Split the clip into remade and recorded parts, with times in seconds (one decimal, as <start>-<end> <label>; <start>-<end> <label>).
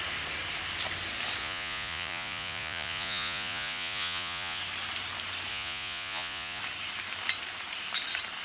0.0-1.4 recorded; 1.4-4.6 remade; 4.6-5.5 recorded; 5.5-6.6 remade; 6.6-8.4 recorded